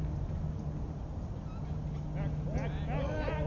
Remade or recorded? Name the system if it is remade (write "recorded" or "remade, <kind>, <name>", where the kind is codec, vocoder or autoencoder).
recorded